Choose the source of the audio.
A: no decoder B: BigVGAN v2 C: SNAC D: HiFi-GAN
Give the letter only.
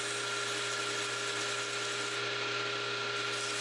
A